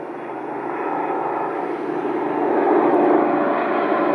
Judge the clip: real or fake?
real